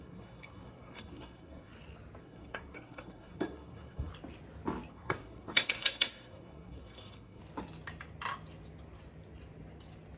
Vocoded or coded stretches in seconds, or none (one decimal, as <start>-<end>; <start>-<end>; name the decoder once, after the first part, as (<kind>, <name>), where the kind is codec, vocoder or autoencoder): 0.0-1.7 (codec, SNAC); 2.2-4.1; 4.9-7.4